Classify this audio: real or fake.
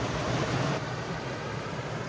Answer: fake